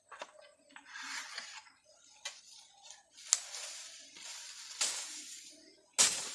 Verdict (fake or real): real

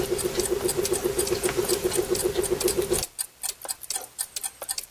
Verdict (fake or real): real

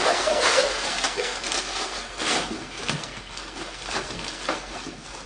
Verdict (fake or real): fake